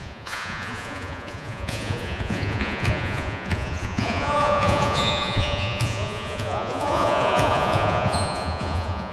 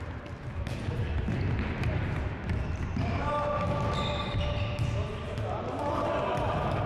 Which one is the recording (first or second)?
second